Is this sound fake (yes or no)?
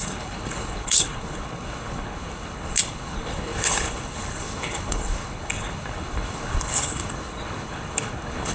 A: yes